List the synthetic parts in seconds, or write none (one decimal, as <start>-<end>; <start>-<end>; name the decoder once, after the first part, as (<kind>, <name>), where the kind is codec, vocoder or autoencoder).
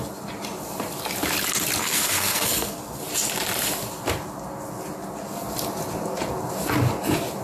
1.8-3.0 (codec, SNAC)